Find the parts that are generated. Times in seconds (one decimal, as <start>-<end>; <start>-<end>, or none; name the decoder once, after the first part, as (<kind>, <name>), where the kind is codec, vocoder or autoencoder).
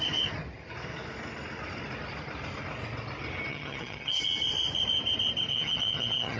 3.5-4.2 (vocoder, HiFi-GAN); 5.5-6.4